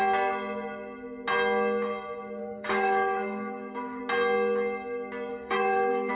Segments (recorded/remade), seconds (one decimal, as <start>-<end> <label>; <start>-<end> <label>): 0.0-2.4 recorded; 2.4-4.0 remade; 4.0-5.3 recorded; 5.3-6.1 remade